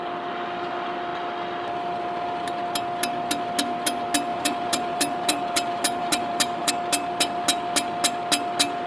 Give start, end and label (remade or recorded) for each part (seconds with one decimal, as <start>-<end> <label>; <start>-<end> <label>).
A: 0.0-4.3 recorded; 4.3-6.7 remade; 6.7-8.9 recorded

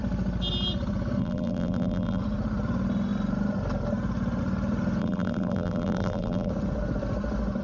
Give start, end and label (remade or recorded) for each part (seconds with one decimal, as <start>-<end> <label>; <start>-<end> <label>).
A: 0.0-1.2 recorded; 1.2-2.2 remade; 2.2-5.0 recorded; 5.0-6.5 remade; 6.5-7.6 recorded

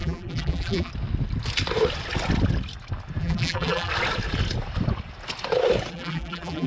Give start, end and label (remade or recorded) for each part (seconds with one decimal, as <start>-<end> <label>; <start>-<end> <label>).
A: 0.0-0.9 remade; 0.9-3.2 recorded; 3.2-3.9 remade; 3.9-5.9 recorded; 5.9-6.7 remade